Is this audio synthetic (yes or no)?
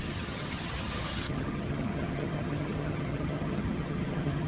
yes